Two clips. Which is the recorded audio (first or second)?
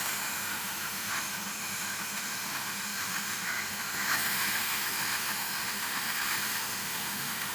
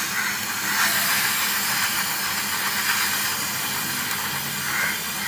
second